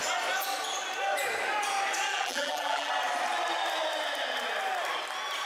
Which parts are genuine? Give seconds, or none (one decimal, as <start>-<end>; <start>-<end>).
0.0-2.1; 2.9-5.4